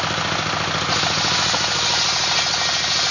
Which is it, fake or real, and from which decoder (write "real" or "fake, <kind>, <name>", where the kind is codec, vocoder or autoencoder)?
real